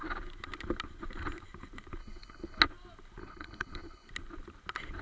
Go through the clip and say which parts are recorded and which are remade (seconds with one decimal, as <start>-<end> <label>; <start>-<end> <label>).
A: 0.0-2.0 recorded; 2.0-2.6 remade; 2.6-3.2 recorded; 3.2-4.1 remade; 4.1-5.0 recorded